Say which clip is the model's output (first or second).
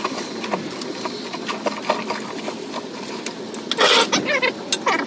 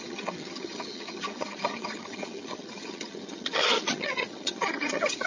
second